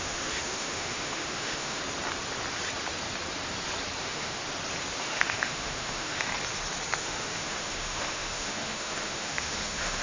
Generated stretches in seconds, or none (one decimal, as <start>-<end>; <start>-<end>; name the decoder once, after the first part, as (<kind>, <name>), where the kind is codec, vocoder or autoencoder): 0.0-1.8 (autoencoder, DAC-VAE); 4.0-4.4; 5.0-6.3; 7.0-10.0